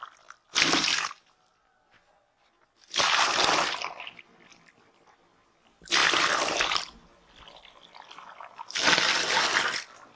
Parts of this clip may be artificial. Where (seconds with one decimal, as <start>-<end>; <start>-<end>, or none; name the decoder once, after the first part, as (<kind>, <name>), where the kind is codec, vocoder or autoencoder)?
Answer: none

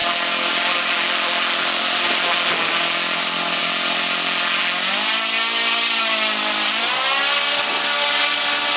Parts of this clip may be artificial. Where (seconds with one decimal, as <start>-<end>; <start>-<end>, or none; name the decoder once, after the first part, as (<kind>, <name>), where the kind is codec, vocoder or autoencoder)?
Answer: none

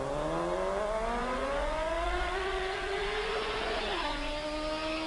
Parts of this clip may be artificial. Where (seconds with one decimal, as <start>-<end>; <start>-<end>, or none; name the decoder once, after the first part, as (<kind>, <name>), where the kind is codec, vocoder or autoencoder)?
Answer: 1.2-4.3 (vocoder, Vocos)

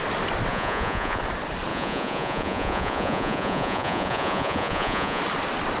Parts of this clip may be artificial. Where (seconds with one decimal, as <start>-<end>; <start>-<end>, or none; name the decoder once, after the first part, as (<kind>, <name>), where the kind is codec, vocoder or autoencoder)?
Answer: 0.5-1.2 (vocoder, Vocos); 1.7-5.2

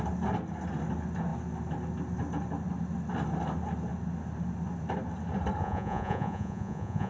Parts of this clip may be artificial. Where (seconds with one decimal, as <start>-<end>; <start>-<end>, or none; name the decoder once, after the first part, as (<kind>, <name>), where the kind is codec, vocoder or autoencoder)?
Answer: 5.6-7.1 (vocoder, Vocos)